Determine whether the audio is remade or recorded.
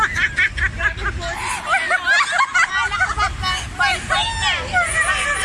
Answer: recorded